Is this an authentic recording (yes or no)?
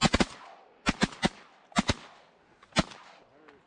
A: yes